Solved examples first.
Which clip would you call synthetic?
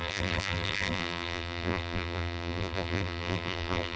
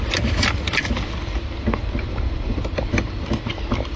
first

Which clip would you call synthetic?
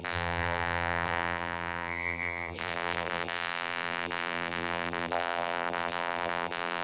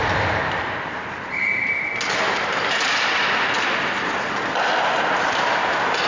first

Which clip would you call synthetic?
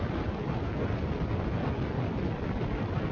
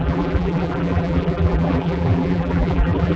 second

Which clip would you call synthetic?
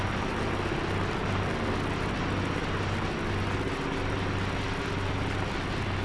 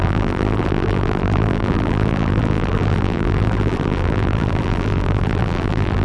second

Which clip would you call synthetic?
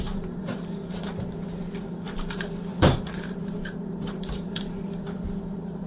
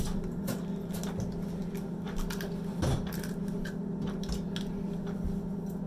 first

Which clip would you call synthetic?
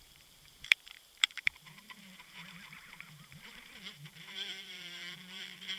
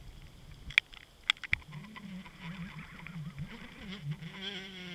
first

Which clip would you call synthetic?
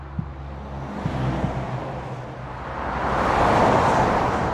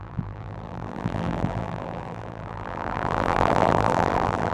second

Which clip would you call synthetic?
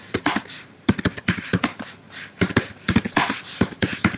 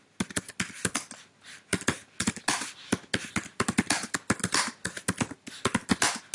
first